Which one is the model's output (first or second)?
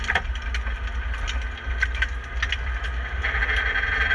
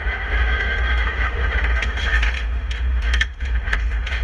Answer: second